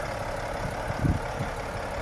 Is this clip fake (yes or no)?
yes